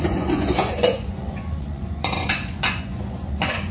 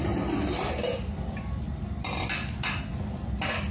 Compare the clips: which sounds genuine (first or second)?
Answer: second